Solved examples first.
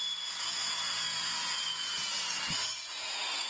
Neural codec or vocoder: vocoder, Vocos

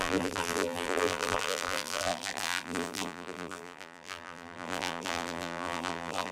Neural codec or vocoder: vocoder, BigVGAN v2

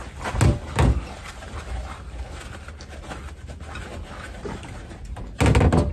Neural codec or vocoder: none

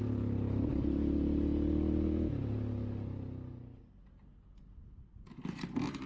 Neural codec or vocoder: none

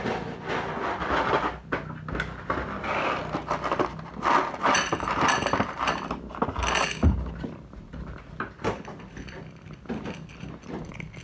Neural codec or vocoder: none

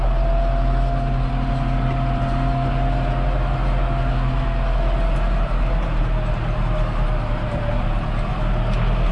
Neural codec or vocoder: none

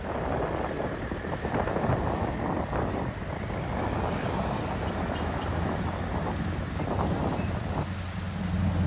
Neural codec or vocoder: none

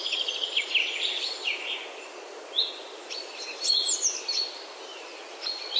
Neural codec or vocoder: none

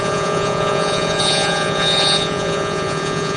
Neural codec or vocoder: vocoder, Vocos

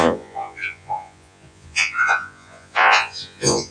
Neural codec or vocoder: vocoder, Vocos